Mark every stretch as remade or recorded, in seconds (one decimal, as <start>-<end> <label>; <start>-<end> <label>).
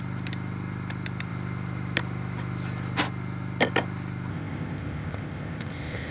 0.0-4.3 recorded; 4.3-6.1 remade